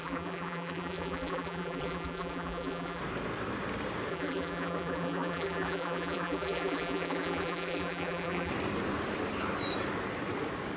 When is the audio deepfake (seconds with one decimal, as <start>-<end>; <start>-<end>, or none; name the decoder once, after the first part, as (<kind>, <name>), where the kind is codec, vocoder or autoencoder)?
0.0-3.0 (vocoder, BigVGAN v2); 4.1-8.5